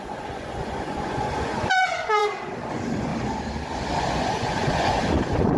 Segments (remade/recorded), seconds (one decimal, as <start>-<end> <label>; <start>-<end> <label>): 0.0-2.2 remade; 2.2-2.7 recorded; 2.7-3.1 remade; 3.1-4.0 recorded; 4.0-5.6 remade